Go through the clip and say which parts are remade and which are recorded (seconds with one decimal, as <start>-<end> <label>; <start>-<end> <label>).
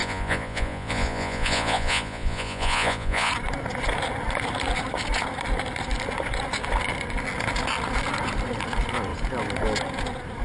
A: 0.0-3.3 remade; 3.3-10.4 recorded